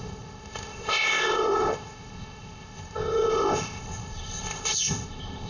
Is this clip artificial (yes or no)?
yes